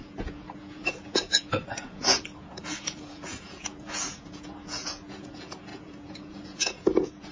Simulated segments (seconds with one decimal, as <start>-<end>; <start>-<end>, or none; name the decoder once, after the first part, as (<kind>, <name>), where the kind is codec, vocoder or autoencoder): 0.0-7.3 (vocoder, Vocos)